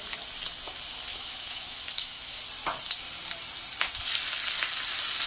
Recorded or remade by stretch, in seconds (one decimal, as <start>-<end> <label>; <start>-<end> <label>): 0.0-1.1 recorded; 1.1-2.4 remade; 2.4-5.3 recorded